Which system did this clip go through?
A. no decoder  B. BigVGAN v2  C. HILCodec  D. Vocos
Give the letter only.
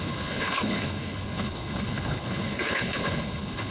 C